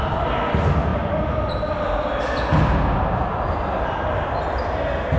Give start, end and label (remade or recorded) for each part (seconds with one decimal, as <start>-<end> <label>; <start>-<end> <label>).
0.0-5.2 recorded

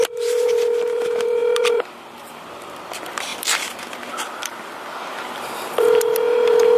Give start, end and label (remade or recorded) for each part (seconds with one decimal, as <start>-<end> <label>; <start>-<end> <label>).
0.0-6.8 remade

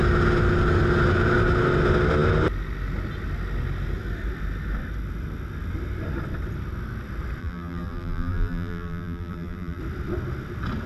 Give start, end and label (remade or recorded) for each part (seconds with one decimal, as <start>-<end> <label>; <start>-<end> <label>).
0.0-7.4 recorded; 7.4-9.8 remade; 9.8-10.9 recorded

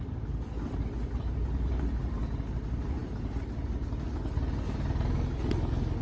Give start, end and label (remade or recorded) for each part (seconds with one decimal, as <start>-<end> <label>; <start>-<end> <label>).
0.0-6.0 recorded

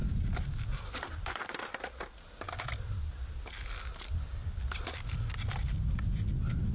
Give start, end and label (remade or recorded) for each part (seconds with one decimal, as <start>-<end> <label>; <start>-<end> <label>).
0.0-6.7 recorded

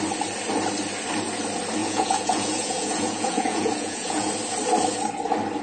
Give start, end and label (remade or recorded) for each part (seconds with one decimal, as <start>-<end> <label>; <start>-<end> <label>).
0.0-1.8 recorded; 1.8-4.3 remade; 4.3-5.6 recorded

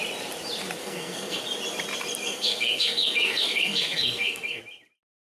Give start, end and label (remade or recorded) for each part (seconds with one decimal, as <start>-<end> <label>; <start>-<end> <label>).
0.0-0.8 recorded; 0.8-1.4 remade; 1.4-2.2 recorded; 2.2-4.6 remade; 4.6-5.3 recorded